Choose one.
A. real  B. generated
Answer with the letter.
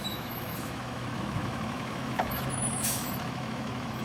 B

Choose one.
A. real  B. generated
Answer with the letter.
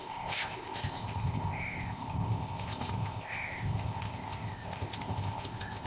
B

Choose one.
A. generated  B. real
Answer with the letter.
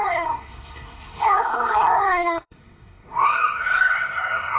A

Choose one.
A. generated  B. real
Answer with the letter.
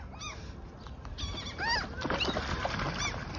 B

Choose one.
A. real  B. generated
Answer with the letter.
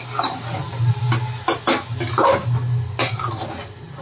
A